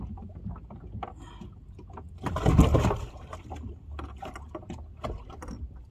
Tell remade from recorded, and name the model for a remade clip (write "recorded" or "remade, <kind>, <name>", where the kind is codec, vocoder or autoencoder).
recorded